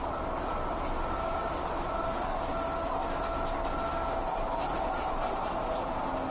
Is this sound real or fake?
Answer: real